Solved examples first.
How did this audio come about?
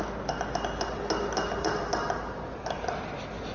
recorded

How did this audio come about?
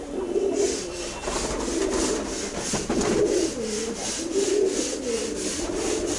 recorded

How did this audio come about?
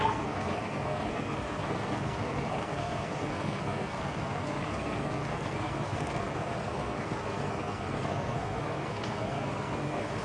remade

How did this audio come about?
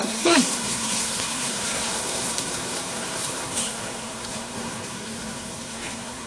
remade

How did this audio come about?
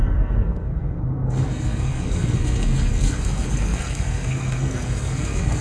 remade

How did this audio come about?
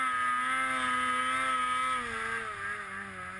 recorded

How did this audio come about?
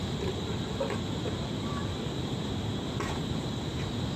recorded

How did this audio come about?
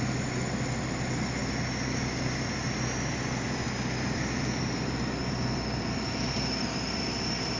recorded